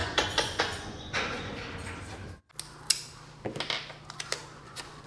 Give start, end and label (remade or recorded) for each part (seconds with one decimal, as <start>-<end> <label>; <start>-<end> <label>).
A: 0.0-1.5 remade; 1.5-4.6 recorded; 4.6-5.1 remade